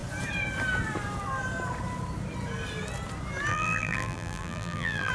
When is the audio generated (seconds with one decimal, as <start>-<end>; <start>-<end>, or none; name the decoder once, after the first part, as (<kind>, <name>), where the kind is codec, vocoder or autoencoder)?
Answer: 3.5-5.1 (vocoder, BigVGAN v2)